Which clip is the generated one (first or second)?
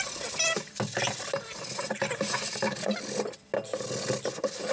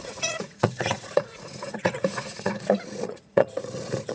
second